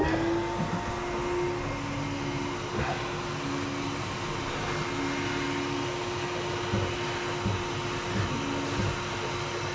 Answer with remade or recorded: recorded